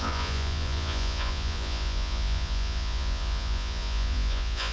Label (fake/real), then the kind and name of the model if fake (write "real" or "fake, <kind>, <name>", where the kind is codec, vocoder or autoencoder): fake, vocoder, Vocos